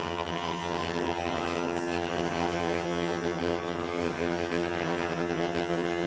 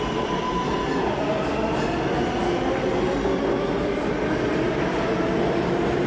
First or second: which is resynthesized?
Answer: first